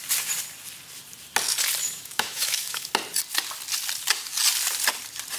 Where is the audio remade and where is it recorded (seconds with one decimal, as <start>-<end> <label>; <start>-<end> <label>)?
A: 0.0-1.8 recorded; 1.8-2.9 remade; 2.9-5.4 recorded